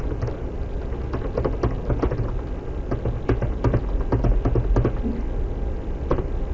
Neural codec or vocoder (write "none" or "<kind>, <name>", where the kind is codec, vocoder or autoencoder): none